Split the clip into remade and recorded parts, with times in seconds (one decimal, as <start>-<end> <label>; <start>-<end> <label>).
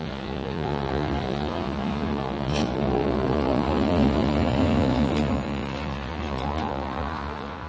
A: 0.0-7.7 remade